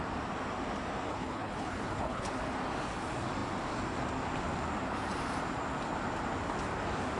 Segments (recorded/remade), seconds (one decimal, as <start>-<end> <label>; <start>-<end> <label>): 0.0-1.1 recorded; 1.1-2.3 remade; 2.3-7.2 recorded